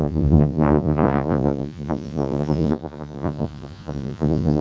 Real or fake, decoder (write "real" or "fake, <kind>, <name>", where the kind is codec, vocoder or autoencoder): fake, vocoder, Vocos